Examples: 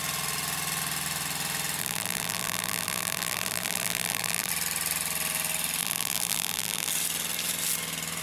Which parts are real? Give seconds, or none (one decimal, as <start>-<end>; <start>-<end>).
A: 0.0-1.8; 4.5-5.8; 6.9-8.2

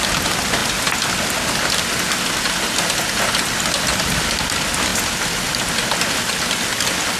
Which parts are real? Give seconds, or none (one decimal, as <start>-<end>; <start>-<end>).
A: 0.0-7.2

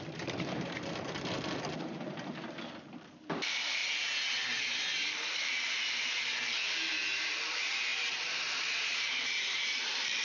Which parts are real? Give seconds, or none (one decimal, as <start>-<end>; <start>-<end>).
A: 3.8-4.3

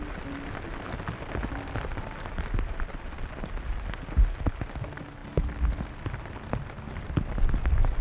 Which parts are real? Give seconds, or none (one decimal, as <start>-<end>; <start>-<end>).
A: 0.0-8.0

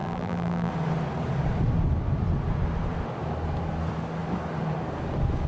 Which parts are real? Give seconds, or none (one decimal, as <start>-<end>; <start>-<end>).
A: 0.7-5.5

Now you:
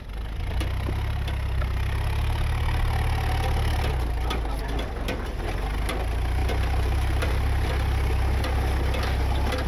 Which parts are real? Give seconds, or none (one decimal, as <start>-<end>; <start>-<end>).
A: 0.0-6.4; 7.7-9.7